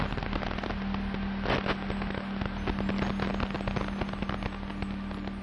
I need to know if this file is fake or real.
real